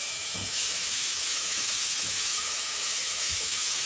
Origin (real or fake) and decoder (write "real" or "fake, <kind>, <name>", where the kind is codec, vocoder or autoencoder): fake, autoencoder, DAC-VAE